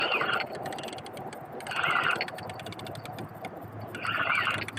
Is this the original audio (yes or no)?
yes